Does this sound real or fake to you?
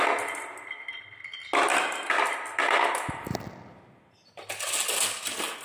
real